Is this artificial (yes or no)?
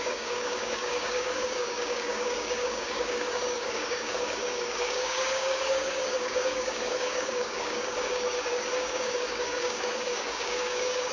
yes